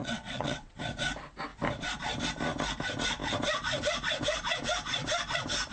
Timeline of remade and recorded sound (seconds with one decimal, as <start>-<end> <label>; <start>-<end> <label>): 0.0-0.8 remade; 0.8-5.7 recorded